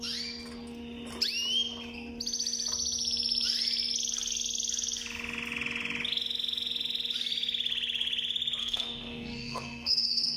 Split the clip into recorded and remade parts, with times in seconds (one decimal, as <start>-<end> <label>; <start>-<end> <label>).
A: 0.0-8.6 recorded; 8.6-10.4 remade

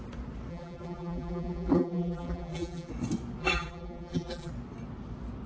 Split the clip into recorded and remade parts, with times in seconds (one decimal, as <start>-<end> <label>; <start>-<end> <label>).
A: 0.0-0.5 recorded; 0.5-2.9 remade; 2.9-3.4 recorded; 3.4-4.5 remade; 4.5-5.5 recorded

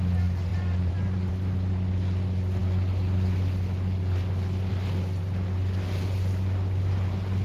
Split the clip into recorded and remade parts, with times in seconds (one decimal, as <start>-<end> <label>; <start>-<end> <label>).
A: 0.0-0.5 recorded; 0.5-1.3 remade; 1.3-7.4 recorded

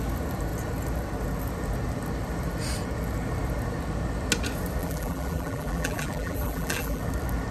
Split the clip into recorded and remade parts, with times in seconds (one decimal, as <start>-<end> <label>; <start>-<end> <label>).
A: 0.0-4.8 recorded; 4.8-7.0 remade; 7.0-7.5 recorded

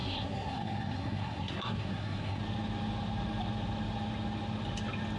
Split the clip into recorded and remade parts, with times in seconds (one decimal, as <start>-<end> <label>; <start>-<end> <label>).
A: 0.0-2.4 remade; 2.4-5.2 recorded

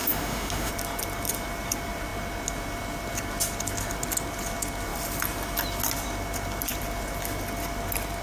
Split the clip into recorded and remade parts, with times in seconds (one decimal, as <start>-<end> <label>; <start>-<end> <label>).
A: 0.0-0.7 remade; 0.7-8.2 recorded

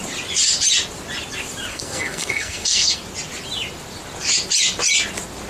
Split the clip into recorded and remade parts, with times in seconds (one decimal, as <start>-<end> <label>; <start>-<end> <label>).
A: 0.0-1.7 recorded; 1.7-3.0 remade; 3.0-5.5 recorded

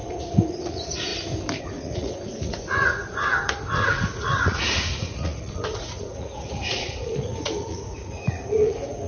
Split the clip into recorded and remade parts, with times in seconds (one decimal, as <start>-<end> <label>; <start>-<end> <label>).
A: 0.0-1.1 remade; 1.1-1.6 recorded; 1.6-9.1 remade